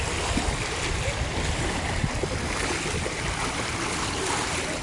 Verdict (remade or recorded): recorded